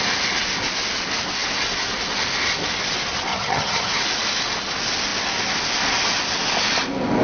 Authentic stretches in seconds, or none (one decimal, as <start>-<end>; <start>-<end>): 0.0-3.3; 3.9-7.2